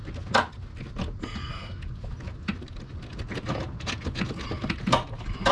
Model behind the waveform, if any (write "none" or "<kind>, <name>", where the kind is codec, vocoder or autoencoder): none